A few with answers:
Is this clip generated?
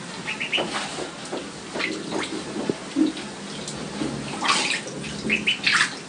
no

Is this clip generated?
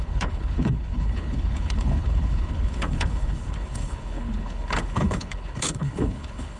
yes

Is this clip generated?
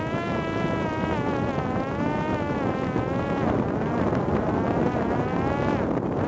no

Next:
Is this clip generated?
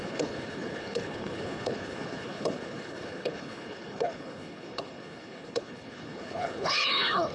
yes